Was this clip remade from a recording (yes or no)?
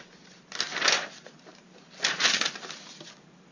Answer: no